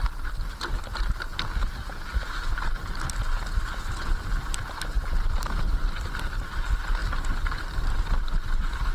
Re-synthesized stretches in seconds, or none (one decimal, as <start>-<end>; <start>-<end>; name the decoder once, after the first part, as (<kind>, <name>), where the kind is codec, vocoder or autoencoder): none